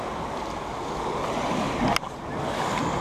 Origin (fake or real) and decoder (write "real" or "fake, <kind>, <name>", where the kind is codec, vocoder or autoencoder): real